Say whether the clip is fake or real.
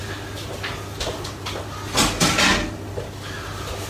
real